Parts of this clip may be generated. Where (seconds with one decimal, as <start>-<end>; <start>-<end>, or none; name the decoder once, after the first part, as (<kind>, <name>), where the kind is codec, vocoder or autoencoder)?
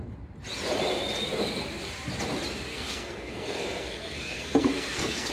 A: 2.7-5.3 (codec, SNAC)